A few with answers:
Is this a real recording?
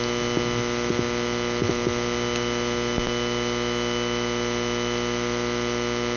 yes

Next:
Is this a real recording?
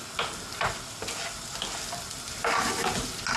yes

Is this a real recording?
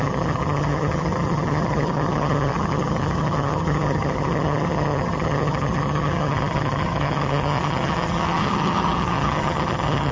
no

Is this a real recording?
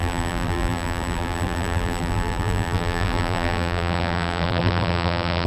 no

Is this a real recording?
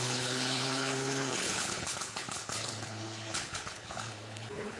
no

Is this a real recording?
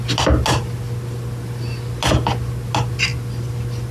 yes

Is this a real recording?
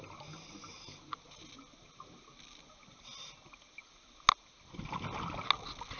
yes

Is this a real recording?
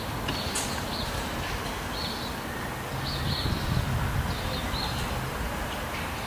yes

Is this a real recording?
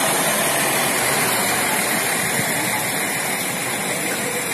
yes